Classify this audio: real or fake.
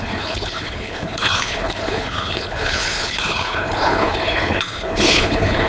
fake